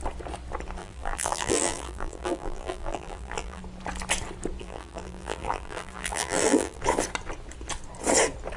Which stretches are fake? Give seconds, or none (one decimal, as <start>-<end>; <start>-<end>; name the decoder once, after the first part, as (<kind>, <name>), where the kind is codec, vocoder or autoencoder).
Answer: 0.8-3.6 (vocoder, BigVGAN v2); 4.6-6.8